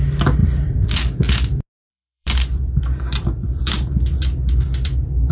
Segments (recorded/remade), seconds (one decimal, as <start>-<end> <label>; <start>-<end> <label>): 0.0-0.4 recorded; 0.4-1.0 remade; 1.0-1.9 recorded; 1.9-5.3 remade